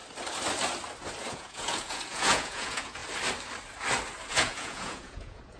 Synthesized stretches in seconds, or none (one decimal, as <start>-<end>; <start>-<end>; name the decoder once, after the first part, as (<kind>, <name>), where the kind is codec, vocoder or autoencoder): 1.3-3.0 (vocoder, Vocos); 4.3-5.6